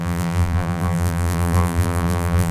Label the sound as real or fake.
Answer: fake